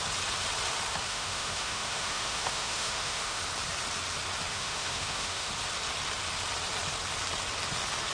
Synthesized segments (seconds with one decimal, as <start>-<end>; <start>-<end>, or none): 1.1-3.4; 4.5-5.5